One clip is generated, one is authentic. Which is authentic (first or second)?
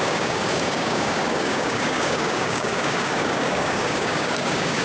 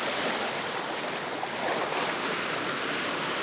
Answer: second